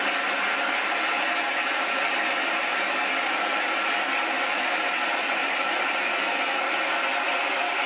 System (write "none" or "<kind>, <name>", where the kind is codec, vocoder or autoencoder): none